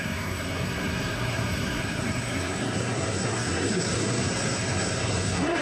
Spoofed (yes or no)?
yes